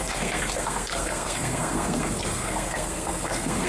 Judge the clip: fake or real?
fake